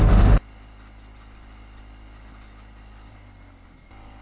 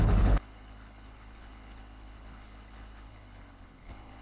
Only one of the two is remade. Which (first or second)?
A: second